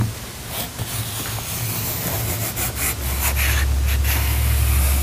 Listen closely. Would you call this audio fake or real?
real